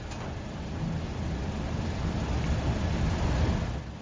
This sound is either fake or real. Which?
real